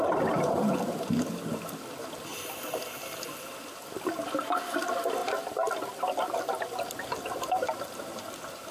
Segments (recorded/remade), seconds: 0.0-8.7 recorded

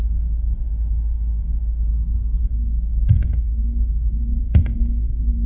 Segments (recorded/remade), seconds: 0.0-1.9 remade; 1.9-2.4 recorded; 2.4-5.5 remade